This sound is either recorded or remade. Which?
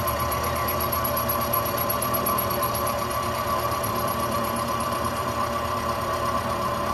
remade